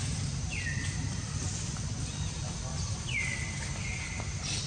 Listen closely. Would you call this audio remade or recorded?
recorded